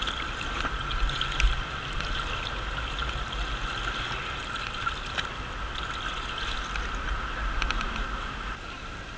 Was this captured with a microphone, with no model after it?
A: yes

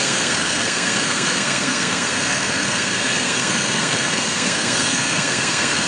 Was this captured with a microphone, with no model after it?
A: no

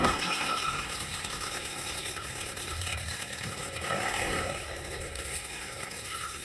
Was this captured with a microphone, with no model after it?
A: no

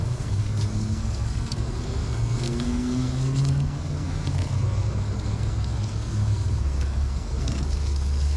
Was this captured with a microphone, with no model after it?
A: no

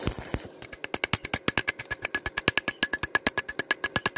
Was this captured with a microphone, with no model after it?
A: yes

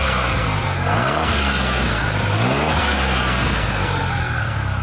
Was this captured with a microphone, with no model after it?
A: no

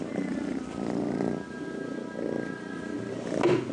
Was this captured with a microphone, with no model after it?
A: yes